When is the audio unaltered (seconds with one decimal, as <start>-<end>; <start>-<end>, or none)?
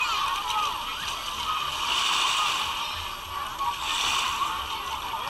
0.0-5.3